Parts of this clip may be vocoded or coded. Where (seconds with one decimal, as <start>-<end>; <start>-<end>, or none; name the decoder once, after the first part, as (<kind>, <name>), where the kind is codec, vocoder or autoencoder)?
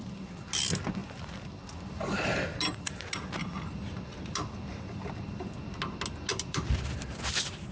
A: 1.0-4.8 (vocoder, BigVGAN v2); 6.3-7.2